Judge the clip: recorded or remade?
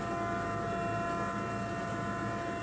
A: recorded